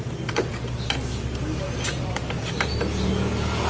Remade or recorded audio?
recorded